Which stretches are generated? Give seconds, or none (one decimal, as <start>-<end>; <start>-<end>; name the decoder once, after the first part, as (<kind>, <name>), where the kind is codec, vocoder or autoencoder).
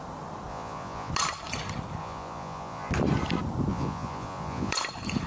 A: 0.5-1.1 (vocoder, Vocos); 2.0-2.9; 3.7-4.7